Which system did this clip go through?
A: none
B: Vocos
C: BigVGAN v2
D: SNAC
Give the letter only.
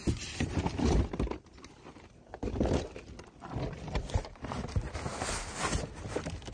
A